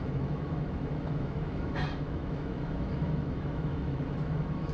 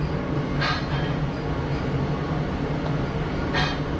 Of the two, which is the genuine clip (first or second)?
second